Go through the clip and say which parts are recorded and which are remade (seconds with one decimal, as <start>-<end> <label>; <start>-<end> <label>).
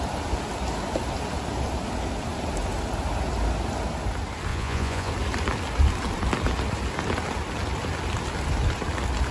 0.0-4.5 recorded; 4.5-5.1 remade; 5.1-9.3 recorded